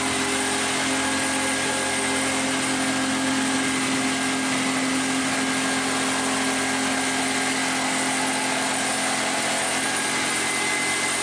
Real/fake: real